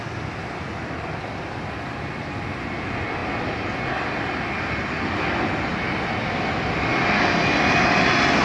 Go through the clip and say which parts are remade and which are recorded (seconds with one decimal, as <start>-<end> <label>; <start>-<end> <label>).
0.0-8.4 recorded